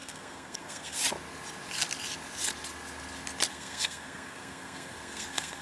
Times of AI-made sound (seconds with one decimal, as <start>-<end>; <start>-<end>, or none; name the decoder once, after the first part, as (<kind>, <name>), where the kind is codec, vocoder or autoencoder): 0.0-1.0 (codec, SNAC); 3.5-5.6